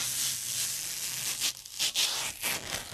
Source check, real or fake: real